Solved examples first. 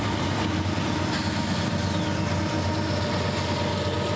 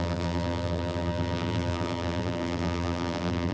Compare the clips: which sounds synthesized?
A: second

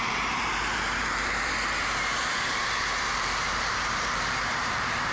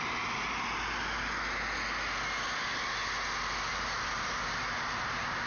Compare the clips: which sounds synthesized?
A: first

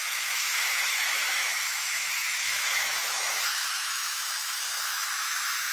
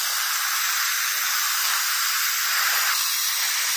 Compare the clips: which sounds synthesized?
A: first